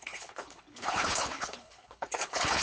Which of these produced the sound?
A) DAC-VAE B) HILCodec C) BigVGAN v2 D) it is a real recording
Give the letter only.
B